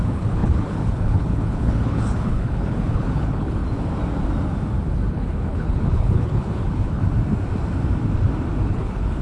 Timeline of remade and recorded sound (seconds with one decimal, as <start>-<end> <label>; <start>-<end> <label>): 0.0-3.6 remade; 3.6-5.1 recorded; 5.1-7.0 remade; 7.0-8.7 recorded; 8.7-9.2 remade